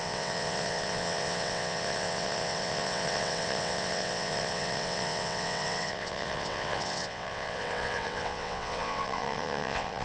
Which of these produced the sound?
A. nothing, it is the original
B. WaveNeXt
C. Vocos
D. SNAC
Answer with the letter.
B